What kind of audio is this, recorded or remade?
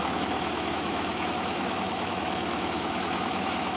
remade